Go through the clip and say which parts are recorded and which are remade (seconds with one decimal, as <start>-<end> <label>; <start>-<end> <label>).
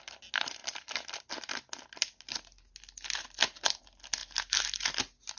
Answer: 0.0-5.4 recorded